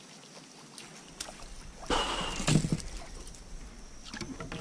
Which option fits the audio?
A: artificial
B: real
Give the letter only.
B